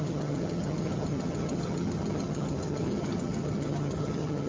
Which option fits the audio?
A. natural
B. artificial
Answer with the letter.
B